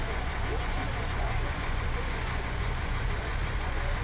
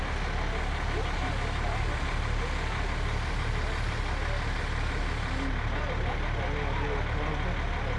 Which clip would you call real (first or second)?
second